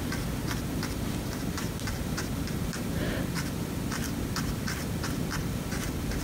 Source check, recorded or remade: remade